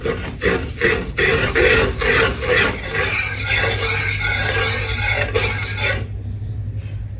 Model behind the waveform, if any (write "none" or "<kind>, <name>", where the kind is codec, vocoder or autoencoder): none